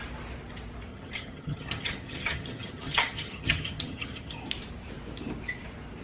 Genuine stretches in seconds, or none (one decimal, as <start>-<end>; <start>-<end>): 0.0-0.9; 4.5-6.0